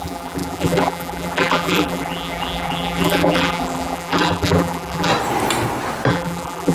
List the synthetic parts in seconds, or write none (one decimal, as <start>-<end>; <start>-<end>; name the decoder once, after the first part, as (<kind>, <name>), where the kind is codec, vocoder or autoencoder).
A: 0.0-5.1 (vocoder, BigVGAN v2); 6.1-6.7